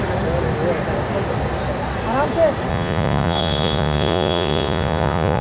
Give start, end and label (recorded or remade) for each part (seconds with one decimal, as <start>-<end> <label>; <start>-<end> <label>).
0.0-2.7 recorded; 2.7-5.4 remade